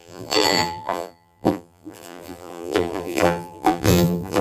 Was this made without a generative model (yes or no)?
no